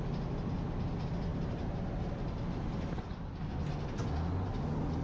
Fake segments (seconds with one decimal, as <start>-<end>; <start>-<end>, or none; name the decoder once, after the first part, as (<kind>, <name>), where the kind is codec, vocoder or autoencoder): 1.3-2.1 (vocoder, BigVGAN v2)